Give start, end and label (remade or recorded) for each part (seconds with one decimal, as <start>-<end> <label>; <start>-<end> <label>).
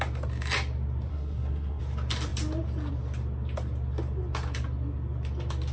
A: 0.0-1.1 recorded; 1.1-1.8 remade; 1.8-5.7 recorded